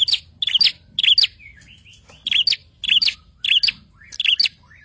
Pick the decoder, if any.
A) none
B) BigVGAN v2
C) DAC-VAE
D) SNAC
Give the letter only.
A